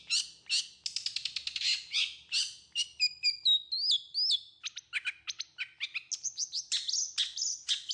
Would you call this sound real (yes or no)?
yes